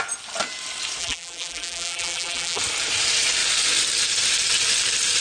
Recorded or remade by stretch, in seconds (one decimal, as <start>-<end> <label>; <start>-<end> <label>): 0.0-1.0 recorded; 1.0-2.6 remade; 2.6-5.2 recorded